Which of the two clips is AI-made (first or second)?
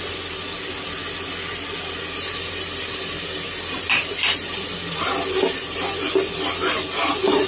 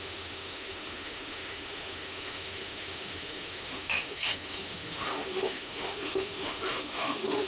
second